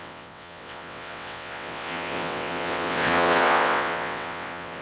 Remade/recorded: remade